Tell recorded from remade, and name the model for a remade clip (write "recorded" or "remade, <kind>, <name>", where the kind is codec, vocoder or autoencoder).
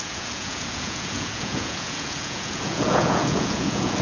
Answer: remade, vocoder, Vocos